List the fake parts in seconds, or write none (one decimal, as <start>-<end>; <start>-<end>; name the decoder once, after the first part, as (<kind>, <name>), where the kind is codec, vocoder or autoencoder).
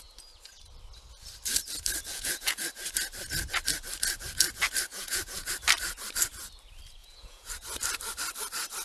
2.1-2.6 (vocoder, Vocos); 4.9-5.5; 7.0-7.5